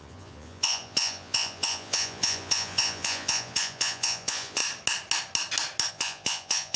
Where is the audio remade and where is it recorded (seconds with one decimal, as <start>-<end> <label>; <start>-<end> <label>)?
0.0-4.6 remade; 4.6-5.9 recorded; 5.9-6.8 remade